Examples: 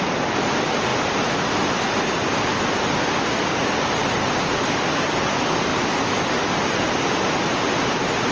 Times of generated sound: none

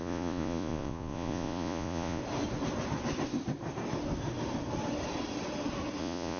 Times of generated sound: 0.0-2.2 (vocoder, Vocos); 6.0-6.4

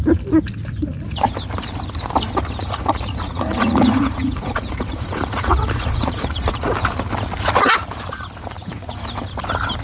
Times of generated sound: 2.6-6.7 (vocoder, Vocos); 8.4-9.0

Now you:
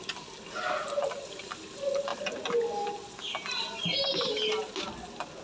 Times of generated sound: none